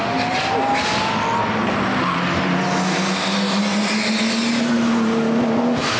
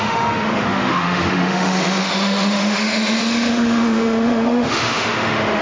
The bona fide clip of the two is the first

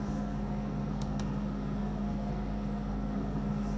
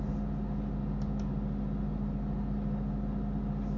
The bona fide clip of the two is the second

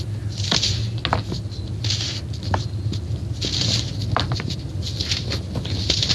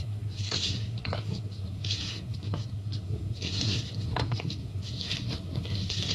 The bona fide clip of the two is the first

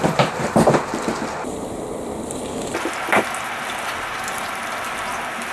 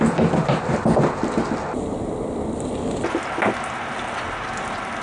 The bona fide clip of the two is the second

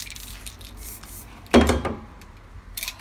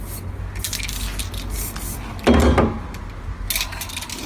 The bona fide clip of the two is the second